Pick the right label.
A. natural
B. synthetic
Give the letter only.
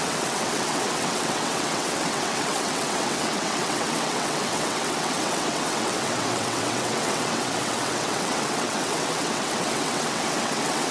B